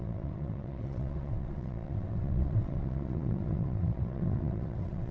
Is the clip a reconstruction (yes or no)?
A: yes